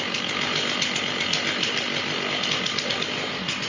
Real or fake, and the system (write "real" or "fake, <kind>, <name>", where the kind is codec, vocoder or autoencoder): real